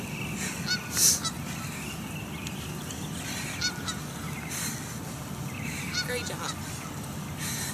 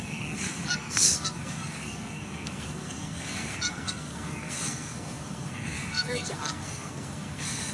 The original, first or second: first